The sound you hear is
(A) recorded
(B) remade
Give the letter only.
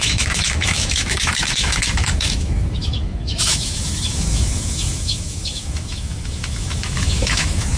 B